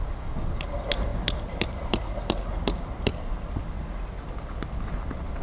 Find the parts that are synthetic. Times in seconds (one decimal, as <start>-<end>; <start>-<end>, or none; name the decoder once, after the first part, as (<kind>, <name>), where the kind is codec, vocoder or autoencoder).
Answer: none